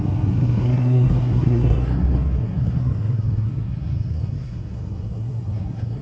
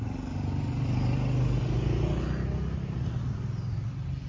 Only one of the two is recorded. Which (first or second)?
second